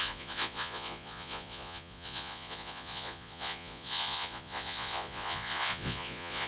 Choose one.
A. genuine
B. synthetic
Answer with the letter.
B